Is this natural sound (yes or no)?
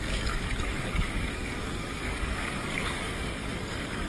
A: no